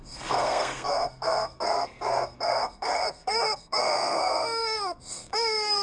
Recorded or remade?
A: remade